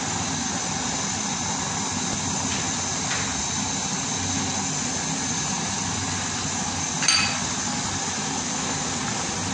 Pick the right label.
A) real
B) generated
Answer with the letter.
A